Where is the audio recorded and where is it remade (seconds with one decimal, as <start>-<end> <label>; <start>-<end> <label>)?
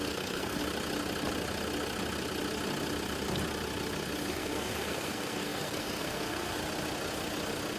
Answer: 0.0-0.6 remade; 0.6-4.3 recorded; 4.3-6.6 remade; 6.6-7.8 recorded